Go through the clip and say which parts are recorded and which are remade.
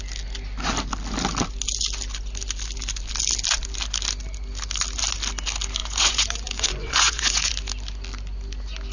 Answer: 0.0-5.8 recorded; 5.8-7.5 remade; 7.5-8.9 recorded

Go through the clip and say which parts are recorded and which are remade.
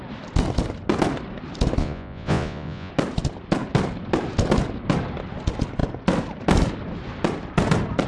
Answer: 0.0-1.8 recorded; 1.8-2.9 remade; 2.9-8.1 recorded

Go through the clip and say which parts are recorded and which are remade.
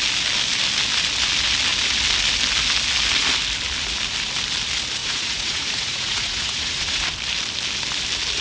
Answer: 0.0-5.0 recorded; 5.0-7.0 remade; 7.0-8.4 recorded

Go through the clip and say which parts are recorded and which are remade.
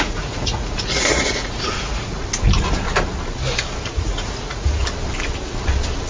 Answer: 0.0-2.2 remade; 2.2-4.0 recorded; 4.0-4.8 remade; 4.8-6.1 recorded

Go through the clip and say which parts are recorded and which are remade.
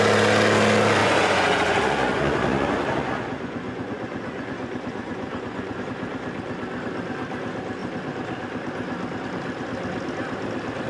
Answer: 0.0-1.0 recorded; 1.0-5.8 remade; 5.8-10.9 recorded